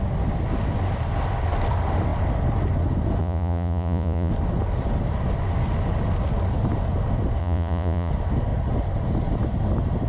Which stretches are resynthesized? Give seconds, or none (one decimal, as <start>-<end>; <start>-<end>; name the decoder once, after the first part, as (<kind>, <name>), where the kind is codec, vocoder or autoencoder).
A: 3.2-4.3 (vocoder, Vocos); 7.4-8.1